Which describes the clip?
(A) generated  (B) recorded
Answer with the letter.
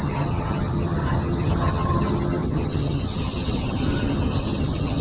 A